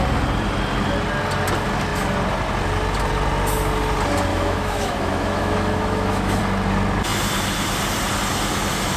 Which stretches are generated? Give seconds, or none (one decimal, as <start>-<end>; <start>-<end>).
4.3-6.4